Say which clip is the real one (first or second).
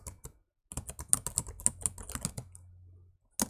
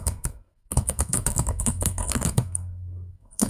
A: first